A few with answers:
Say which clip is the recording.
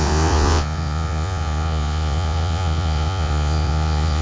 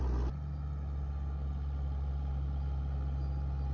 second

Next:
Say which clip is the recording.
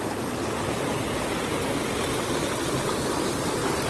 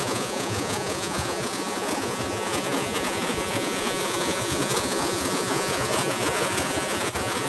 first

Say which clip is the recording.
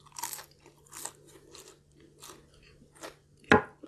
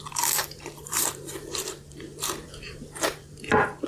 first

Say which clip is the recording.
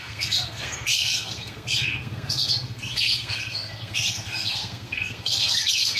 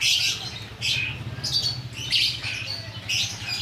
second